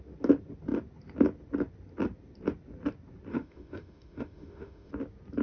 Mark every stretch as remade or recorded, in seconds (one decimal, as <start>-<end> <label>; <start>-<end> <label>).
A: 0.0-3.3 recorded; 3.3-4.9 remade; 4.9-5.4 recorded